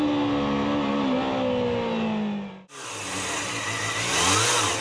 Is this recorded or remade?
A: recorded